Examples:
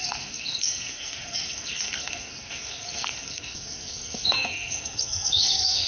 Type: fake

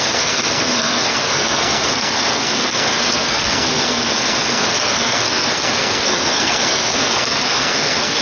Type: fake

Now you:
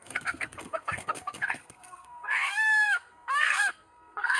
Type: fake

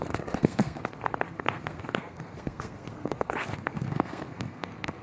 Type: fake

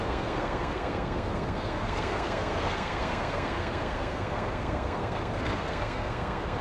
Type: fake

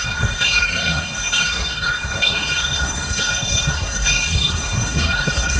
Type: fake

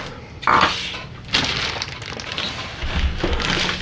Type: real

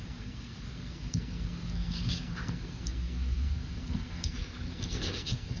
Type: fake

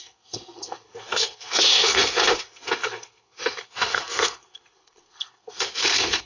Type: fake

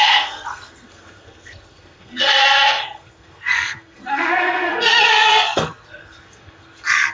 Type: fake